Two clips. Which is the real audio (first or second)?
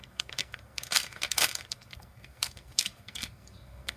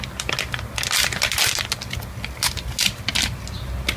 second